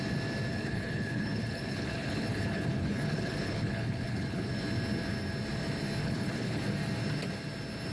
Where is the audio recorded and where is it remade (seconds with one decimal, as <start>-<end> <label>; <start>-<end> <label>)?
0.0-0.5 recorded; 0.5-4.5 remade; 4.5-6.0 recorded; 6.0-6.6 remade; 6.6-7.9 recorded